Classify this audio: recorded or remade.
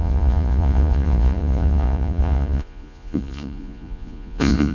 remade